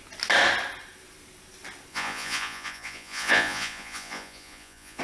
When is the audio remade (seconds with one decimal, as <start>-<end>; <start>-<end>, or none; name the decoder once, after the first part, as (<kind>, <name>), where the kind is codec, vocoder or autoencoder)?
1.9-5.0 (vocoder, Vocos)